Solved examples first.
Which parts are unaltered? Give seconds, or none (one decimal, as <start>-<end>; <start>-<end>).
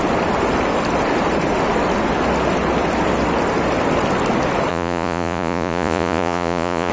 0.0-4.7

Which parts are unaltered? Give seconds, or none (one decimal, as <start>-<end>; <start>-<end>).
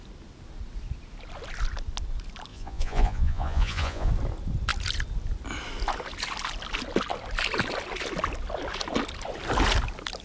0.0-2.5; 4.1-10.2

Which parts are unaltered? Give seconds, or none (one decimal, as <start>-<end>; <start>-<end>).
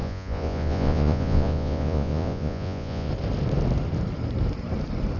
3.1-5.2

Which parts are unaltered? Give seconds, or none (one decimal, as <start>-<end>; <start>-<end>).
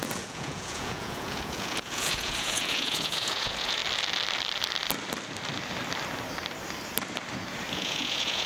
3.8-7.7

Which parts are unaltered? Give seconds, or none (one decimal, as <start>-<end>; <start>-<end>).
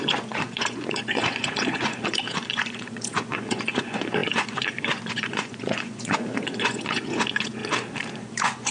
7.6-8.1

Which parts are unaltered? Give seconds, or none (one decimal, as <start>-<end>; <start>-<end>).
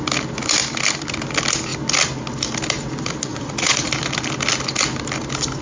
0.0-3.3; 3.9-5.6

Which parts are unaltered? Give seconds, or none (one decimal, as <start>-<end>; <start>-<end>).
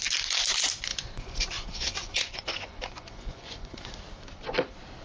0.0-0.9; 3.9-5.0